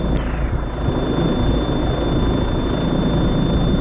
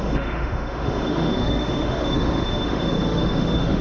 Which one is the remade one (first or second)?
second